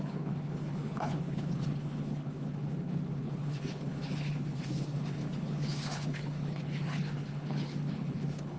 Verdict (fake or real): fake